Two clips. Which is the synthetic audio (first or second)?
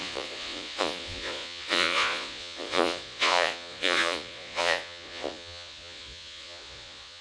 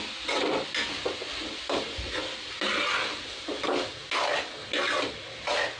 first